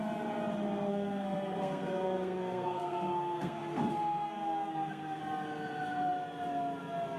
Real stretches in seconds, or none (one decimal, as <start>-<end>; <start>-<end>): 0.0-0.9; 5.2-7.2